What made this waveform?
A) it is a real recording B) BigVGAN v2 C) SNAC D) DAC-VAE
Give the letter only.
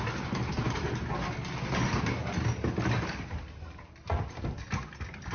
A